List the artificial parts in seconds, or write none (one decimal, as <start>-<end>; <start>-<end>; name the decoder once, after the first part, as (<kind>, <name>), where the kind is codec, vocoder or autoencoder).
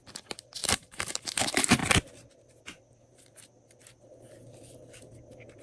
0.6-1.2 (vocoder, BigVGAN v2)